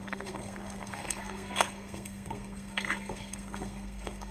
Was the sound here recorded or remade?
remade